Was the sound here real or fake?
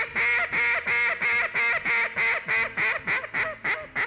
real